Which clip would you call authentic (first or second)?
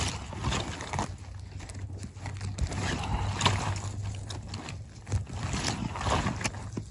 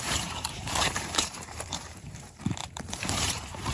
first